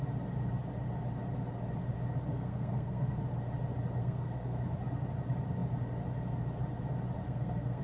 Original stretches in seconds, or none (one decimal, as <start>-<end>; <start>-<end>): 0.0-2.3; 3.2-4.0; 4.6-7.2